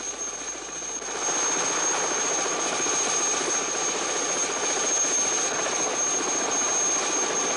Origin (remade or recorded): recorded